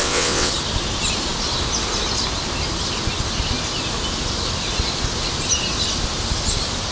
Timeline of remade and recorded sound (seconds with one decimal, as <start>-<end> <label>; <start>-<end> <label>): 0.0-0.5 remade; 0.5-6.9 recorded